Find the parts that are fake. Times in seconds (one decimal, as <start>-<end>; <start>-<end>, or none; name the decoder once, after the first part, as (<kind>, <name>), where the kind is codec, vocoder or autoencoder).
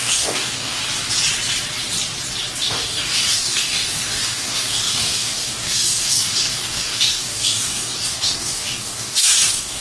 0.0-0.8 (codec, DAC); 2.6-9.8